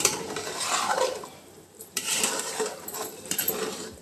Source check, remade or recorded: remade